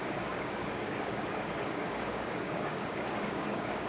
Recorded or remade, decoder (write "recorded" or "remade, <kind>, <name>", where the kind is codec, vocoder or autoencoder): remade, codec, DAC